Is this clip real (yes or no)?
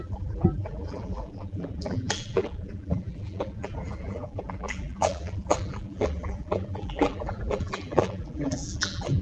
no